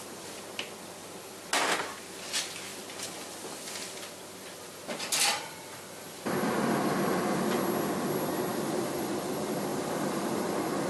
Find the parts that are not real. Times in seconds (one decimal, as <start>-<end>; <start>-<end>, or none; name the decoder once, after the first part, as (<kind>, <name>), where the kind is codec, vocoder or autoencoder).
8.5-9.1 (vocoder, BigVGAN v2); 9.7-10.4

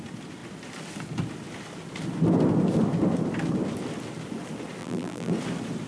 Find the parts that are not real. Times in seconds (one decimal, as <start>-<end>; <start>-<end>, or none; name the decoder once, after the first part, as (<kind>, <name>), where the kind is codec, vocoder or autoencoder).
4.8-5.3 (vocoder, BigVGAN v2)

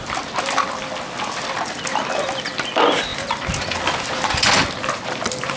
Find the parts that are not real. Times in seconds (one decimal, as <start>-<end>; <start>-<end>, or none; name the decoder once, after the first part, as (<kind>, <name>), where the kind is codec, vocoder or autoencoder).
none

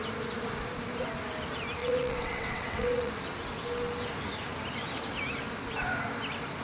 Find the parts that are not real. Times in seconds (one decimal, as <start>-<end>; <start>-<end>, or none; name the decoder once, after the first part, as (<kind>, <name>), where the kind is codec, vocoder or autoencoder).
1.8-3.1 (vocoder, WaveNeXt)